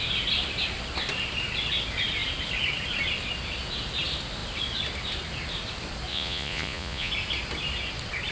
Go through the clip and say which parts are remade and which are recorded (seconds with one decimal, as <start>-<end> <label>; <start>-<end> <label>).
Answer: 0.0-6.1 recorded; 6.1-7.1 remade; 7.1-8.3 recorded